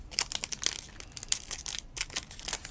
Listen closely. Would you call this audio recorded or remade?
recorded